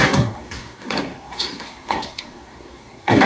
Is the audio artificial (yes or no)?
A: yes